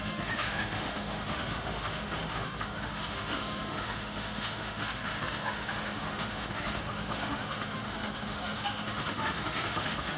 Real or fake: fake